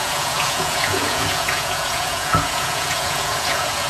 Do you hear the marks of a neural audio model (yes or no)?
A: yes